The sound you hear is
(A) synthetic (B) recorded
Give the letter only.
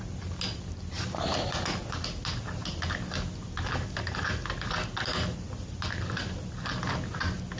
B